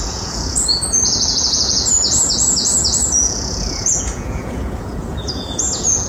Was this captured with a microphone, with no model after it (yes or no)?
no